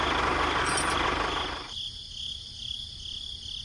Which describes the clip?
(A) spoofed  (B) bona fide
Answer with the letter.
B